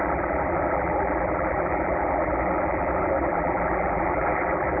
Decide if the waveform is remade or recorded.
remade